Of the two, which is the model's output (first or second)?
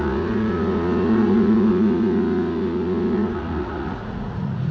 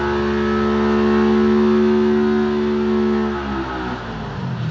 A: first